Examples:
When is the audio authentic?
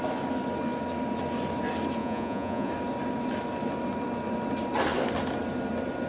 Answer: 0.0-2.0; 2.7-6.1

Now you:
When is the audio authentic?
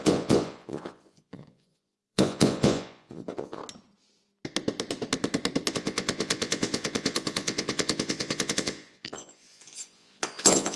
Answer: 3.6-5.7